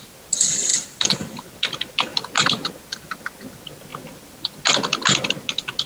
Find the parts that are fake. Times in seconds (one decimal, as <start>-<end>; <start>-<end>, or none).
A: none